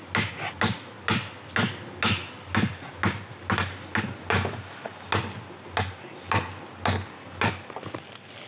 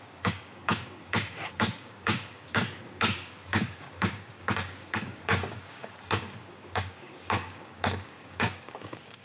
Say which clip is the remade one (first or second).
second